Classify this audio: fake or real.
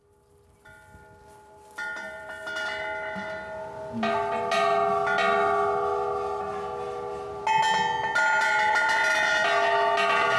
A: real